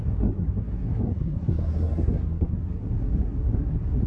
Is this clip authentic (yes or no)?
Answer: no